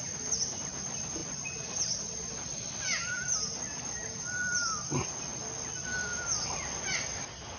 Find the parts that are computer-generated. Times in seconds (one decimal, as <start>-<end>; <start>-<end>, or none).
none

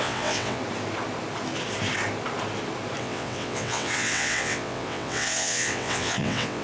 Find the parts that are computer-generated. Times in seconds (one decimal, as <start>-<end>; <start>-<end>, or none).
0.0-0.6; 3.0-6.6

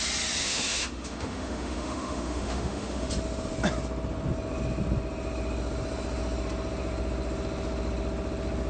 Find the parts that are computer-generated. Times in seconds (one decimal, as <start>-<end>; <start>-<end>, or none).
0.4-3.1

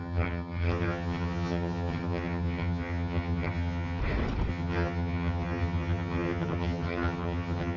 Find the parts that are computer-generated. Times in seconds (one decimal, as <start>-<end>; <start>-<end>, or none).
0.0-4.0; 4.5-7.8

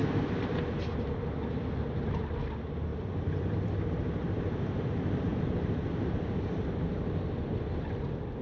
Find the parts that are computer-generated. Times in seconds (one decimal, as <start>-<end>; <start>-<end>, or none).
0.0-0.8; 2.9-3.9; 5.3-7.8

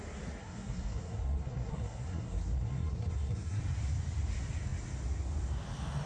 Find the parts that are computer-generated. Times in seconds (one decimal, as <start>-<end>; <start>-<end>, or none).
0.4-3.6